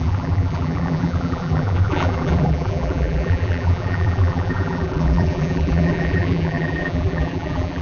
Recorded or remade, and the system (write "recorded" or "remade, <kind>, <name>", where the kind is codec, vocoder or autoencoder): remade, vocoder, BigVGAN v2